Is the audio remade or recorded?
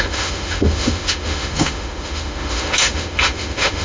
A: remade